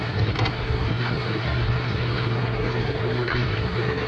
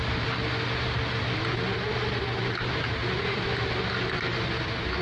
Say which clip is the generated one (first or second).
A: first